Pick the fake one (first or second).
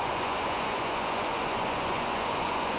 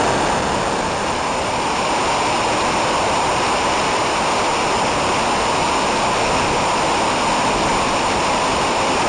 first